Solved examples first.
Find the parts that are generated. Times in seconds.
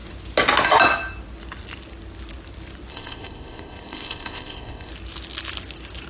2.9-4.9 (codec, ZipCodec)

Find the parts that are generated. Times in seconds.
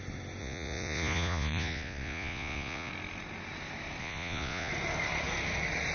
0.4-2.9 (vocoder, Vocos); 4.0-4.7